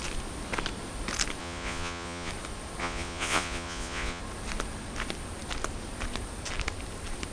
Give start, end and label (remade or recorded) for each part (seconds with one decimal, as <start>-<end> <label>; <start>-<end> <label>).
0.0-1.4 recorded; 1.4-2.3 remade; 2.3-2.8 recorded; 2.8-4.2 remade; 4.2-7.3 recorded